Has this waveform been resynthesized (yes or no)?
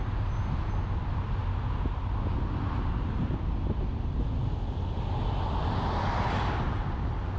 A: no